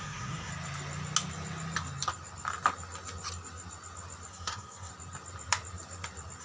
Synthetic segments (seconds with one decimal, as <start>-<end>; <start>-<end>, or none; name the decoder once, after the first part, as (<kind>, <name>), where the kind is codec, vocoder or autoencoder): 0.0-0.5 (codec, SNAC); 4.3-4.9